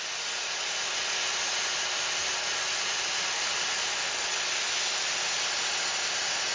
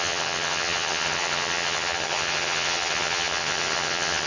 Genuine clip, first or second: first